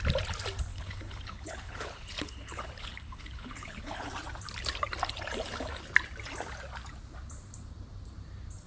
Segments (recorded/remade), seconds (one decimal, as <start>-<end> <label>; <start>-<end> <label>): 0.0-0.7 recorded; 0.7-4.1 remade; 4.1-8.7 recorded

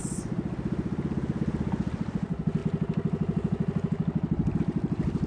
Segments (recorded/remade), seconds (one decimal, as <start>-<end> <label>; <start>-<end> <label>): 0.0-5.3 recorded

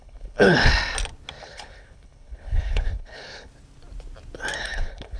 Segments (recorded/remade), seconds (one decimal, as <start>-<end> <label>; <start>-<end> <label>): 0.0-0.7 remade; 0.7-1.4 recorded; 1.4-3.5 remade; 3.5-4.6 recorded; 4.6-5.2 remade